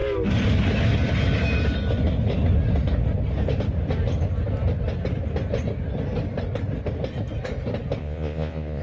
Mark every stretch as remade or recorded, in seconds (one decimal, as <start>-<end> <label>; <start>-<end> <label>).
0.0-8.0 recorded; 8.0-8.8 remade